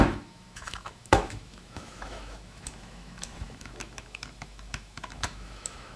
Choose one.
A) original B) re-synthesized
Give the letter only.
B